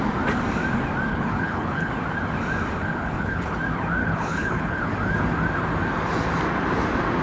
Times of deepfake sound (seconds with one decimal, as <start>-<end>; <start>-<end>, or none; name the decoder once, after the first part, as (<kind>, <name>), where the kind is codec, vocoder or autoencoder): 1.1-1.9 (codec, HILCodec); 2.8-3.5; 4.0-4.8